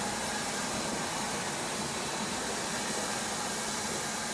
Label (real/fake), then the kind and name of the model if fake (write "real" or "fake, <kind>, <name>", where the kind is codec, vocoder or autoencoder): real